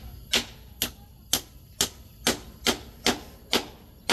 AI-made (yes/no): no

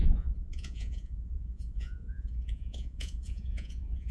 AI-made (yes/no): yes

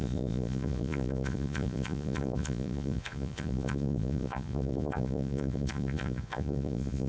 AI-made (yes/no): yes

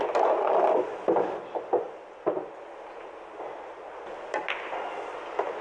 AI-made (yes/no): no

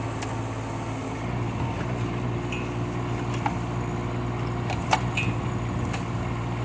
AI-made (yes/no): no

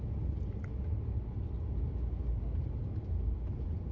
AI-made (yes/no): no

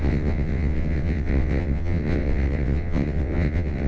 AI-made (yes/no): yes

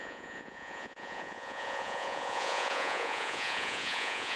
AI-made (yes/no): yes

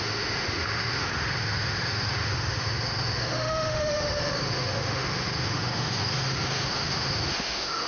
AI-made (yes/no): yes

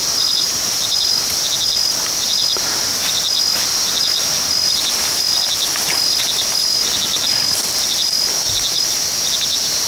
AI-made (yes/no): no